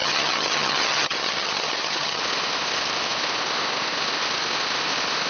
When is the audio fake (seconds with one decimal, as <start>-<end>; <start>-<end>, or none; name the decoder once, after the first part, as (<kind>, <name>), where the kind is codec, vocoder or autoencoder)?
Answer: 0.0-2.2 (vocoder, HiFi-GAN)